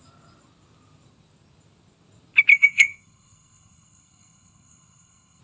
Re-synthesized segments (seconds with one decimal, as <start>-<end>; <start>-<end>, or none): 2.5-5.4